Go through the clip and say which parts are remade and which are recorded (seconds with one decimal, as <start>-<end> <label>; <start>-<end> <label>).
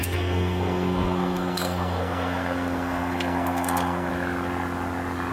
0.0-4.1 remade; 4.1-5.3 recorded